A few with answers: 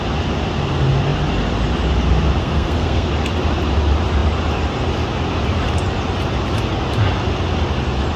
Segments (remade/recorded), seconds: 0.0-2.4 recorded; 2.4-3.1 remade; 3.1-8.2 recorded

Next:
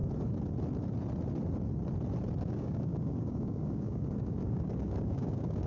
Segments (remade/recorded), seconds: 0.0-2.4 recorded; 2.4-5.7 remade

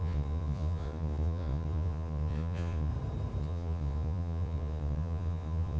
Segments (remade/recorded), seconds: 0.0-2.9 remade; 2.9-3.4 recorded; 3.4-5.8 remade